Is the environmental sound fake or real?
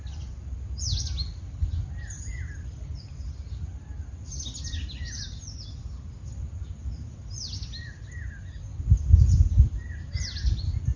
real